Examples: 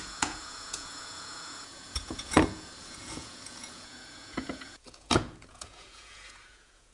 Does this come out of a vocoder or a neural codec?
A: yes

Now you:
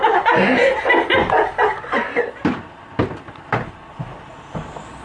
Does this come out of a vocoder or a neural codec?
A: no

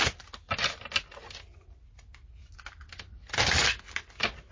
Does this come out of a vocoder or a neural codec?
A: no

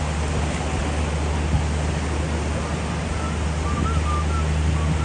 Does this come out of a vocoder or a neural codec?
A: no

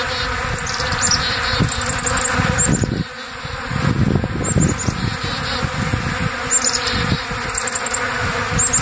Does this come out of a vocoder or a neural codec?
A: no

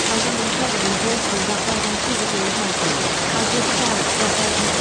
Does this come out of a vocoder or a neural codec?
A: no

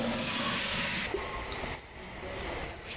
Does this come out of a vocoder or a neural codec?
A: no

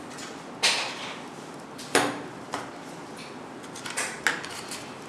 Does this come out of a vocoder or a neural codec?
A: no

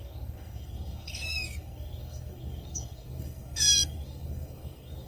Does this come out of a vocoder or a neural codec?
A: yes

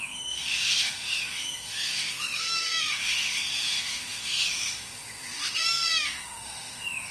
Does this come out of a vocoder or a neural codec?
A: yes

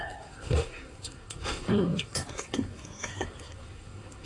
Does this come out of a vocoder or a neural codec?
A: yes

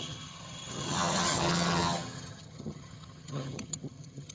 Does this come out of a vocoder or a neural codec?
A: yes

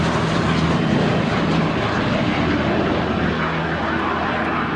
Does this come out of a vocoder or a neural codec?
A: no